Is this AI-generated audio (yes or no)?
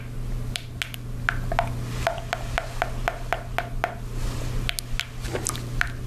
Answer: no